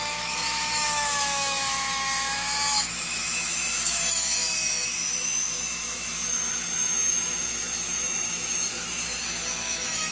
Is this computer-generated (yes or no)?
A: yes